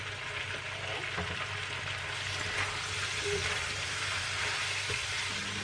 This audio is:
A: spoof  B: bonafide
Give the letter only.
B